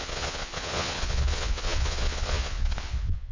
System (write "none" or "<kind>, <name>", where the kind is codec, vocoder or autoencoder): vocoder, Vocos